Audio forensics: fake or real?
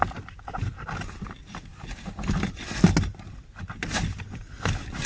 real